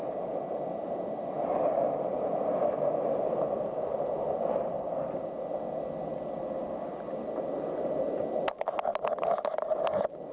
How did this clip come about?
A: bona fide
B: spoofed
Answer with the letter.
A